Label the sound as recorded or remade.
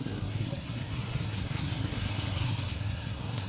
remade